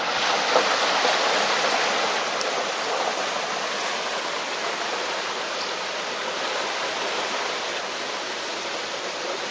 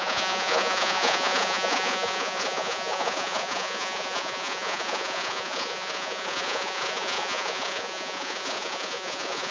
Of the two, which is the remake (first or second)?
second